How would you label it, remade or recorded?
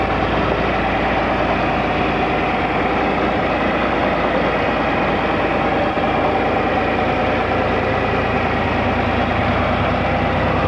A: recorded